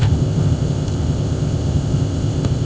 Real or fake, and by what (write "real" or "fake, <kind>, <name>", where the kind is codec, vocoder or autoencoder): fake, codec, ZipCodec